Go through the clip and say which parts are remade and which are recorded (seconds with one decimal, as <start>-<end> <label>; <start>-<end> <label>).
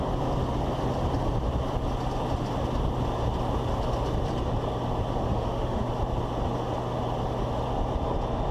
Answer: 0.0-5.3 recorded; 5.3-5.9 remade; 5.9-8.5 recorded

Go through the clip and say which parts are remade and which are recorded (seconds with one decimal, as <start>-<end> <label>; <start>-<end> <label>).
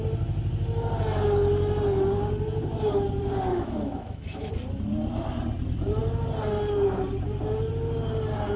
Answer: 0.0-3.5 recorded; 3.5-4.5 remade; 4.5-8.6 recorded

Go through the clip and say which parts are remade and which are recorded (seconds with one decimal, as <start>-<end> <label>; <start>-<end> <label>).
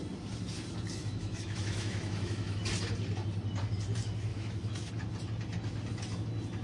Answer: 0.0-1.0 recorded; 1.0-2.6 remade; 2.6-4.3 recorded; 4.3-4.9 remade; 4.9-6.6 recorded